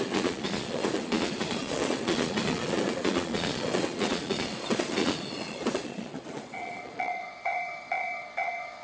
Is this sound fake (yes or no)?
yes